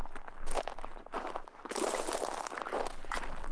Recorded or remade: recorded